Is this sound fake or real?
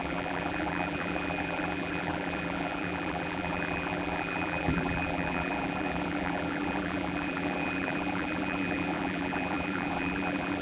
fake